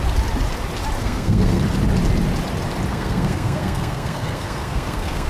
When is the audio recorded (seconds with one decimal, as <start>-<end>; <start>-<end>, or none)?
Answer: 0.0-1.0; 1.6-2.9